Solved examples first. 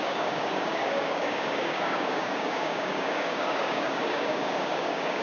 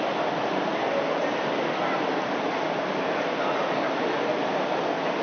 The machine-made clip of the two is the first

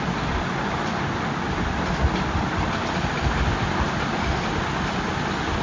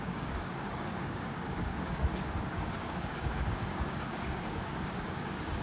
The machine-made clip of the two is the second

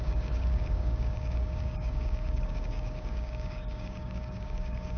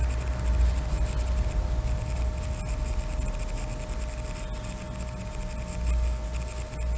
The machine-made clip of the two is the first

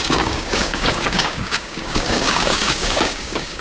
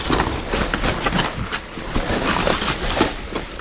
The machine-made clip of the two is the first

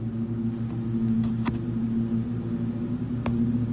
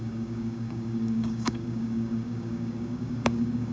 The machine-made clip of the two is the second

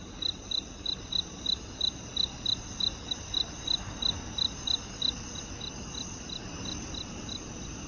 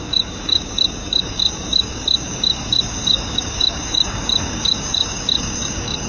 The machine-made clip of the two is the second